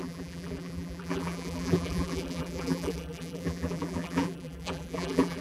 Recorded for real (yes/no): no